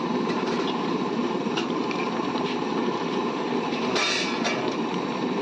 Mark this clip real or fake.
fake